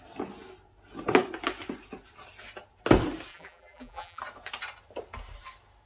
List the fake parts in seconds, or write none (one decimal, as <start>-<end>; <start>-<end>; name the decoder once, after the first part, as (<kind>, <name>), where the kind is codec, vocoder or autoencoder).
3.3-4.2 (vocoder, BigVGAN v2)